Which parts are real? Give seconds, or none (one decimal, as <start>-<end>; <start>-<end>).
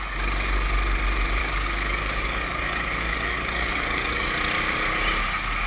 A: 0.0-1.4; 4.3-5.7